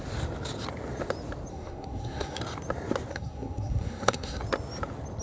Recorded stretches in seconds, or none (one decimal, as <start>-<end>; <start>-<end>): 0.0-1.5; 2.4-3.1; 4.4-5.2